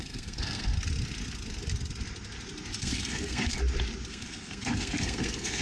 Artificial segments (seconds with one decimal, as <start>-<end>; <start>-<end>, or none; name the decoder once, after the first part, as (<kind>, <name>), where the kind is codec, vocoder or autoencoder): 0.0-0.7 (codec, SNAC); 2.8-3.6; 4.1-5.6